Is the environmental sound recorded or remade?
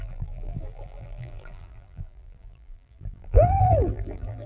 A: remade